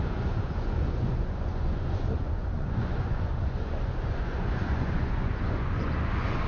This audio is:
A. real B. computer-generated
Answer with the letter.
B